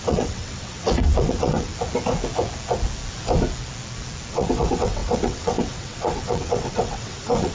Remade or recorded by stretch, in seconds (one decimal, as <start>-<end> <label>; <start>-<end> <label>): 0.0-1.7 remade; 1.7-4.3 recorded; 4.3-7.5 remade